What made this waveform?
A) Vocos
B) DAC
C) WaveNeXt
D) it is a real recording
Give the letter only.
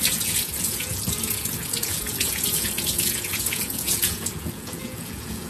A